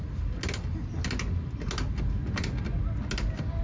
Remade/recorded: recorded